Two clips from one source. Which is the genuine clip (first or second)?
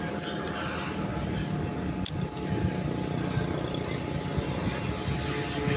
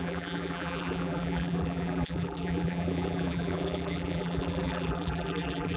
first